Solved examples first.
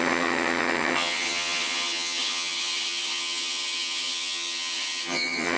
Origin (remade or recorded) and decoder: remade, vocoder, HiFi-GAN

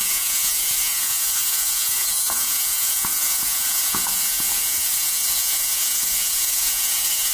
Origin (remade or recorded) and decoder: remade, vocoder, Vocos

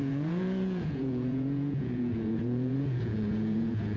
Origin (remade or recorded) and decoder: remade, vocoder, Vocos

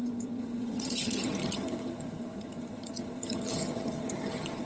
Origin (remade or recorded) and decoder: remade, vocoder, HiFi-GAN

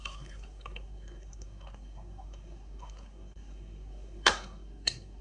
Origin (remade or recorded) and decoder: remade, codec, SNAC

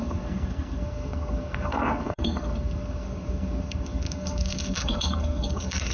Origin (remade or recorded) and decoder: remade, codec, SNAC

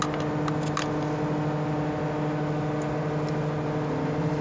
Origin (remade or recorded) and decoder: recorded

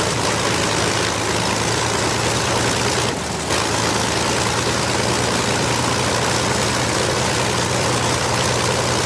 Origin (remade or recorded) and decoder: recorded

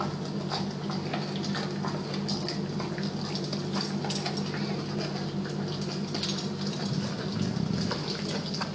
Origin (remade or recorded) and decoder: recorded